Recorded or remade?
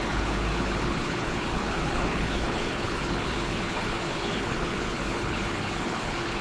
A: remade